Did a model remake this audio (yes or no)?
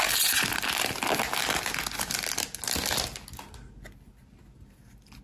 no